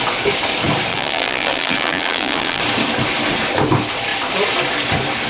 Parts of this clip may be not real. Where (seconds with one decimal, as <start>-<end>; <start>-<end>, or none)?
0.9-2.6